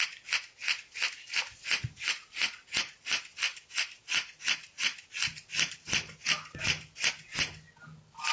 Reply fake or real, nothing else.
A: real